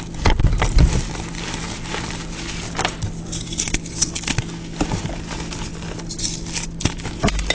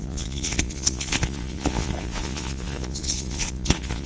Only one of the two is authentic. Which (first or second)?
first